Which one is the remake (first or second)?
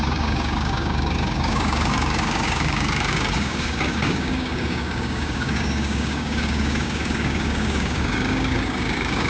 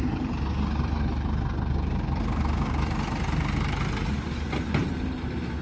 first